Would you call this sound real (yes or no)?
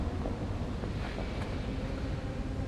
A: yes